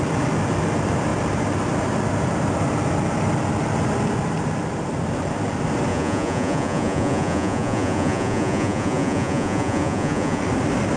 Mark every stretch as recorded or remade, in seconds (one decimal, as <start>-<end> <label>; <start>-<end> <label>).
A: 0.0-5.9 recorded; 5.9-10.4 remade; 10.4-11.0 recorded